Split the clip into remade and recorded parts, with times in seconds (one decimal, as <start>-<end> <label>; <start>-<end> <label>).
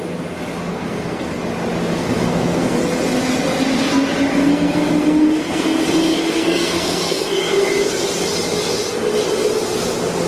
0.0-0.7 recorded; 0.7-1.4 remade; 1.4-1.9 recorded; 1.9-2.8 remade; 2.8-4.3 recorded; 4.3-8.2 remade; 8.2-10.3 recorded